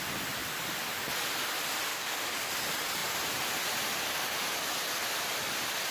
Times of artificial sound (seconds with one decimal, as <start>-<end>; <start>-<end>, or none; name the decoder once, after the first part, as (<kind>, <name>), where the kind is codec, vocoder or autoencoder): 1.9-2.5 (codec, DAC)